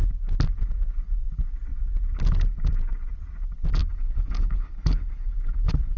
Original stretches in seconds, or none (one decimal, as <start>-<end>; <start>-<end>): 0.0-3.8